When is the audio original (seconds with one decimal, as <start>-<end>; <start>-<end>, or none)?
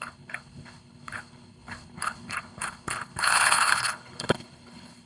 none